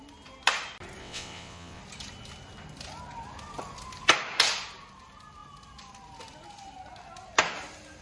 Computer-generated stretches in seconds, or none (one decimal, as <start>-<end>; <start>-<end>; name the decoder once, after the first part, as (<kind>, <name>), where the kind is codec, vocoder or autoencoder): 1.0-1.8 (vocoder, WaveNeXt)